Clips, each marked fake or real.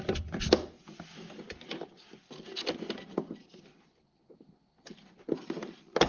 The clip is real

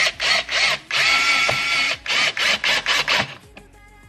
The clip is fake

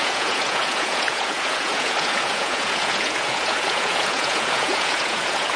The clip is fake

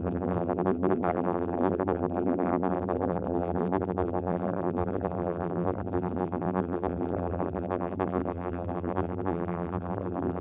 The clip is fake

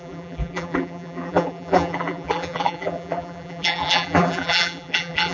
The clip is fake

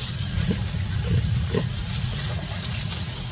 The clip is fake